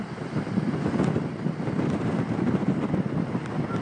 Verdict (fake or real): real